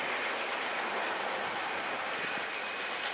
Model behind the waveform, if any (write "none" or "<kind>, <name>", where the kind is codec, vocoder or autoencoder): none